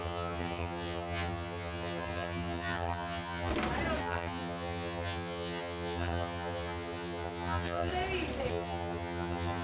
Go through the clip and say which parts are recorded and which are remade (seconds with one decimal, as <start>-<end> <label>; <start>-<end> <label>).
0.0-3.5 remade; 3.5-4.0 recorded; 4.0-7.9 remade; 7.9-8.5 recorded; 8.5-9.6 remade